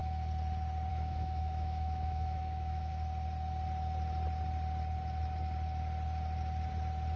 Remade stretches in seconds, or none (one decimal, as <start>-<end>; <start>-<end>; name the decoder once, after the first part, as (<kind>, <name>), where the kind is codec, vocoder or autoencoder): 0.9-2.9 (autoencoder, DAC-VAE)